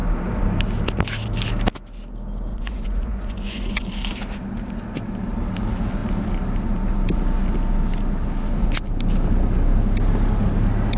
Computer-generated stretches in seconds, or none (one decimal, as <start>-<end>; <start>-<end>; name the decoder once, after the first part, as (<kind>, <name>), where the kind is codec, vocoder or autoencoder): 2.5-3.8 (vocoder, Vocos)